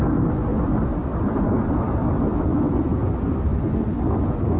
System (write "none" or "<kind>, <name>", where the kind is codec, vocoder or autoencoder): none